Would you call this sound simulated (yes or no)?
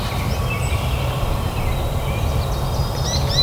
no